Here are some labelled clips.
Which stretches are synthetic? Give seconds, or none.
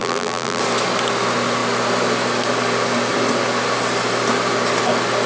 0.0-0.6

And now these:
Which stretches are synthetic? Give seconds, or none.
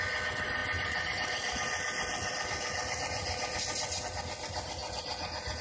none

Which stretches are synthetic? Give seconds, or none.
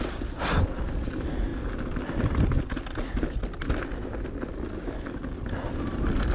none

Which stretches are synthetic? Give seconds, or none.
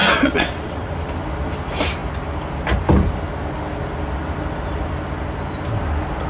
0.0-0.9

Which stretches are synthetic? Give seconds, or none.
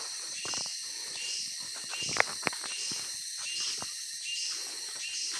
0.7-1.4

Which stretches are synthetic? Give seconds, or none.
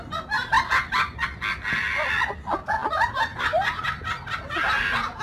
none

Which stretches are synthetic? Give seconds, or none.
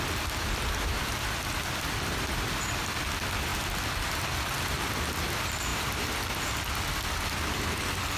none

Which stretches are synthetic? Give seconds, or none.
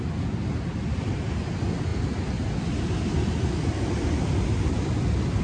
none